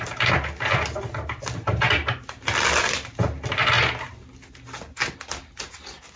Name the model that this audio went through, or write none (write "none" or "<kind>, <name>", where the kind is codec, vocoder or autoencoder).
none